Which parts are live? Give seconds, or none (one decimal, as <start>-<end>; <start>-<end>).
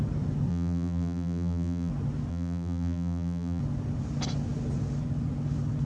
0.0-0.5; 1.9-2.3; 3.6-5.9